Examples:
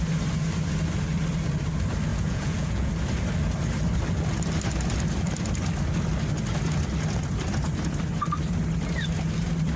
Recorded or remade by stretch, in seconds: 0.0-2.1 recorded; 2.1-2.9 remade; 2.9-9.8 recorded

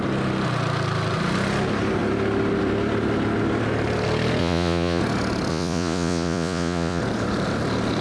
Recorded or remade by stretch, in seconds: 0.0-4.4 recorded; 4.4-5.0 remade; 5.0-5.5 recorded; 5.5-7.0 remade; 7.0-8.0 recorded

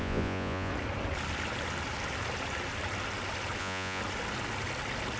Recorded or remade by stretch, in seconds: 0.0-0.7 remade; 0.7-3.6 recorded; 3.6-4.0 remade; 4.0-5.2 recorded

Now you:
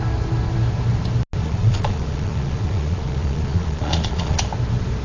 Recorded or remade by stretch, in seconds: 0.0-1.4 recorded; 1.4-4.4 remade; 4.4-5.0 recorded

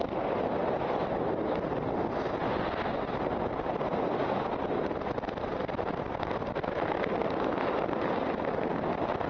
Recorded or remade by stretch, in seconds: 0.0-9.3 recorded